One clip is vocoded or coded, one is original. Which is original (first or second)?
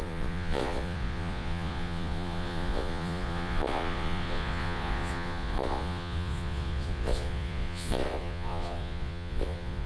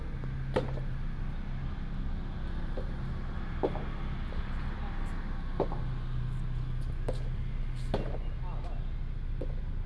second